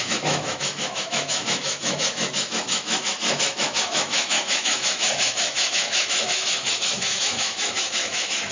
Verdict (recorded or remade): remade